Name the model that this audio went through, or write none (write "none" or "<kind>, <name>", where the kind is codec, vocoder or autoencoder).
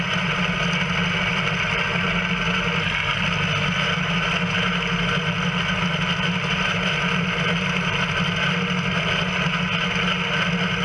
none